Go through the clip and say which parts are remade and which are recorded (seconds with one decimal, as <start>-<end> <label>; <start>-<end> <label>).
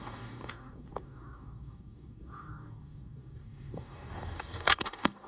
0.0-5.3 remade